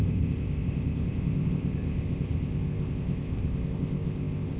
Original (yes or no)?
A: no